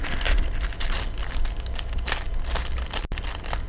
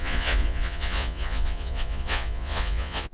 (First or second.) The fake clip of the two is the second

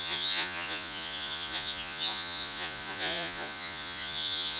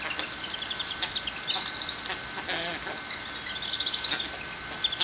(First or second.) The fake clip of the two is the first